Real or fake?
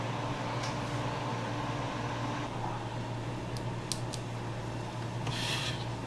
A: real